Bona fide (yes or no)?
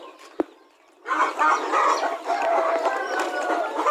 yes